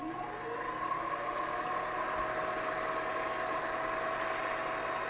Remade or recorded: recorded